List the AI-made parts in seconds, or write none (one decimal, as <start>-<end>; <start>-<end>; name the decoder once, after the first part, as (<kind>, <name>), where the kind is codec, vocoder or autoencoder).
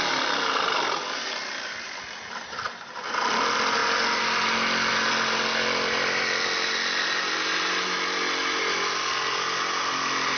none